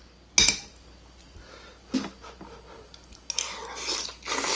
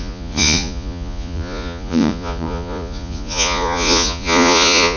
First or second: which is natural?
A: first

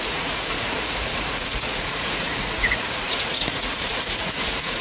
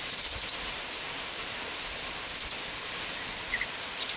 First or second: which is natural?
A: second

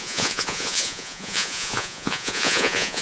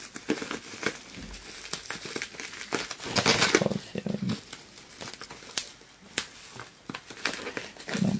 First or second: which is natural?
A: second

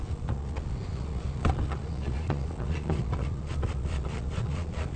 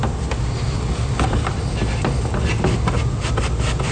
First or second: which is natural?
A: second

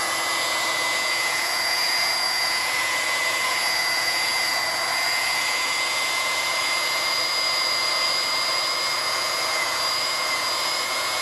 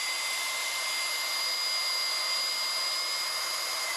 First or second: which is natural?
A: second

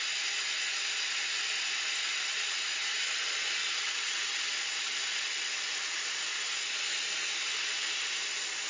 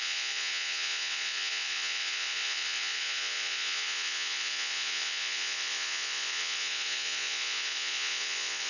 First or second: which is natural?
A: first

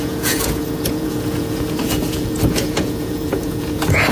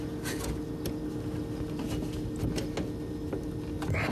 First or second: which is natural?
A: second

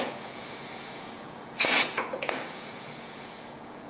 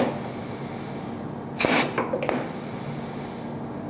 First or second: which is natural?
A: second